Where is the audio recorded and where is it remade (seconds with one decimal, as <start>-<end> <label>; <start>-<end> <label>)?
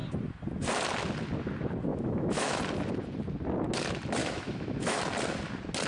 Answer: 0.0-1.9 recorded; 1.9-2.6 remade; 2.6-4.2 recorded; 4.2-5.0 remade; 5.0-5.9 recorded